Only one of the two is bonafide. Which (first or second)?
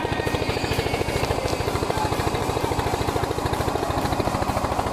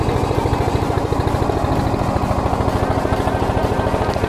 second